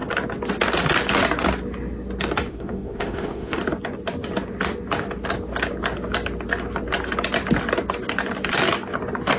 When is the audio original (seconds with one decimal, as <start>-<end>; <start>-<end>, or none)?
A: 0.0-2.5; 3.6-9.4